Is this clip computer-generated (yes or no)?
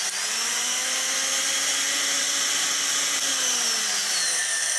no